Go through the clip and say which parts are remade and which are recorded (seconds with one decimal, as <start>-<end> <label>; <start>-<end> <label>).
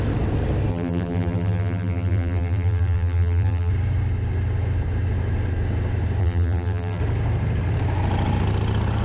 0.0-0.7 recorded; 0.7-3.7 remade; 3.7-6.2 recorded; 6.2-7.0 remade; 7.0-9.0 recorded